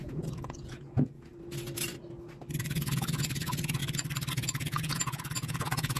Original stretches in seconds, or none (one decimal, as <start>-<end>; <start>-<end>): 1.3-2.6; 3.8-4.3